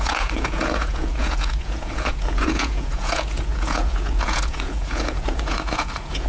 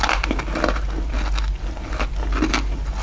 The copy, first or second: first